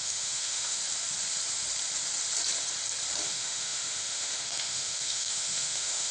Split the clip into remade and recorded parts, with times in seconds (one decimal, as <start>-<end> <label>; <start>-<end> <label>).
0.0-0.8 remade; 0.8-3.3 recorded; 3.3-6.1 remade